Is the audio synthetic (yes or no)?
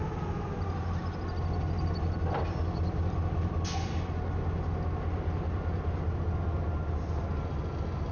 no